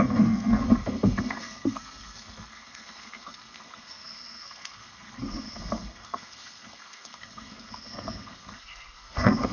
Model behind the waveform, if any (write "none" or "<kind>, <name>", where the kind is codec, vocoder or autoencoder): codec, SNAC